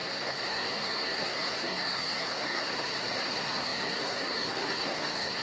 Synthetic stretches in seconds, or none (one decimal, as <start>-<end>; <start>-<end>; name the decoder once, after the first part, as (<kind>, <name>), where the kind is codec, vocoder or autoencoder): 0.0-5.4 (codec, SNAC)